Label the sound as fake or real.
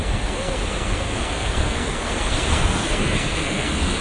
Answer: fake